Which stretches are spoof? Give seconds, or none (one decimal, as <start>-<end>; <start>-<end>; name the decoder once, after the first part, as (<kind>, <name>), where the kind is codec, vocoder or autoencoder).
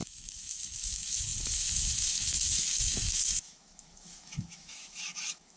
0.0-5.6 (autoencoder, DAC-VAE)